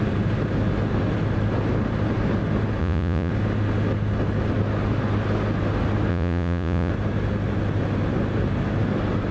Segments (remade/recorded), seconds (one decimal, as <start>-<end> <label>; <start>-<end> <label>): 0.0-2.8 recorded; 2.8-3.3 remade; 3.3-6.1 recorded; 6.1-6.9 remade; 6.9-9.3 recorded